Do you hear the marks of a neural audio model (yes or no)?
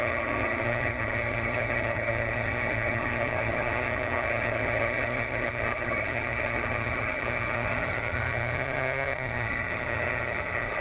yes